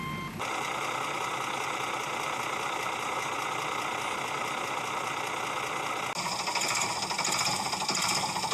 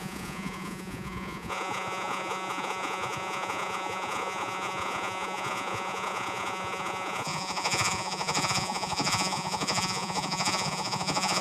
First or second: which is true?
first